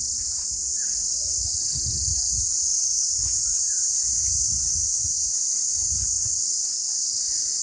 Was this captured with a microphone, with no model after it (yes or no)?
yes